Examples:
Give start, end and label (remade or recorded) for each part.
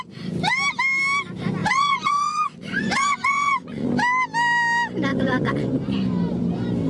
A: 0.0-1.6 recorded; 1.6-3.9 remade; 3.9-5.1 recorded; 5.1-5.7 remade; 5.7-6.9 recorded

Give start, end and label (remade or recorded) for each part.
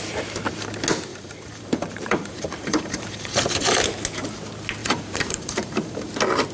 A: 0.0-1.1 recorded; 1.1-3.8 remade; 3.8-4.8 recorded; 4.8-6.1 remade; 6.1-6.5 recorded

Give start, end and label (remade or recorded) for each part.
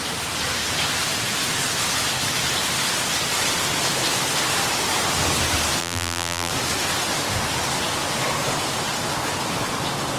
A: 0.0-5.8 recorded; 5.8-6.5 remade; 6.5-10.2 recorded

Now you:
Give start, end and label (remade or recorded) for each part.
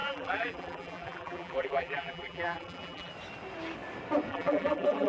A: 0.0-3.1 remade; 3.1-4.3 recorded; 4.3-5.1 remade